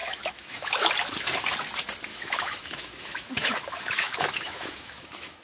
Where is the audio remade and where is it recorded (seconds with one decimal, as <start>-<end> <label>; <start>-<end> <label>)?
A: 0.0-0.9 remade; 0.9-2.1 recorded; 2.1-5.4 remade